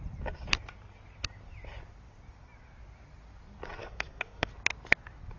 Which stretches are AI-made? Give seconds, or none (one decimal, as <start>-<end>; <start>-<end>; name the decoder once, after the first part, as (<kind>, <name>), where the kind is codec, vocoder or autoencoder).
3.8-4.5 (codec, DAC)